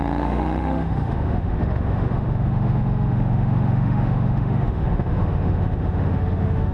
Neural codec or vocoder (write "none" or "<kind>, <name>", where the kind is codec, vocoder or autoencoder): autoencoder, DAC-VAE